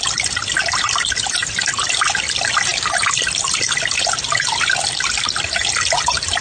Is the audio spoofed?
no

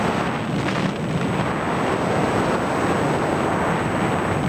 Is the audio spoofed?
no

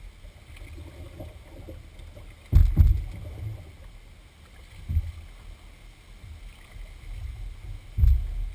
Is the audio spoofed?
no